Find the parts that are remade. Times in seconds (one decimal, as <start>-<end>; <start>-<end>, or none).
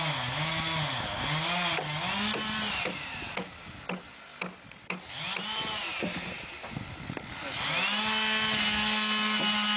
none